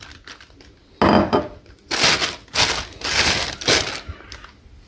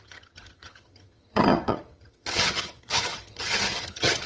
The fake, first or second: second